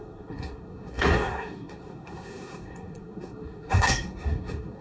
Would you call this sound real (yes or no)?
no